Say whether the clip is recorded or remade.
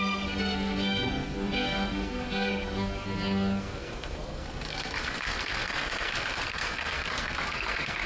remade